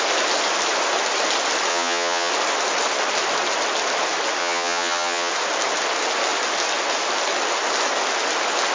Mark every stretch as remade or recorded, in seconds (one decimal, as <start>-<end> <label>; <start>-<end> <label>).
0.0-1.7 recorded; 1.7-2.3 remade; 2.3-4.4 recorded; 4.4-5.3 remade; 5.3-8.7 recorded

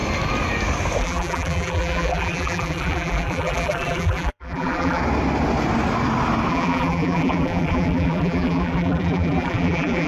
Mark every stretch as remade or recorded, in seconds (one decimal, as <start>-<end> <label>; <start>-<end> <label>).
0.0-1.0 recorded; 1.0-5.0 remade; 5.0-6.5 recorded; 6.5-10.1 remade

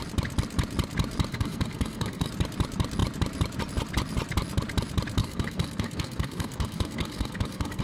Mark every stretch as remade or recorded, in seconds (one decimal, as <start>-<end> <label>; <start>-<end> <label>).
0.0-1.3 recorded; 1.3-2.3 remade; 2.3-5.2 recorded; 5.2-7.8 remade

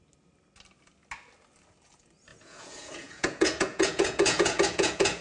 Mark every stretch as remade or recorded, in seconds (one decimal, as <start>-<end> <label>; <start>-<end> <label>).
0.0-2.3 recorded; 2.3-5.2 remade